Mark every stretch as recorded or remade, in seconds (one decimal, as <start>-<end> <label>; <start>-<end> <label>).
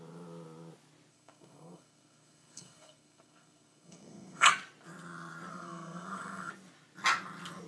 0.0-1.1 recorded; 1.1-4.5 remade; 4.5-5.5 recorded; 5.5-6.5 remade; 6.5-7.7 recorded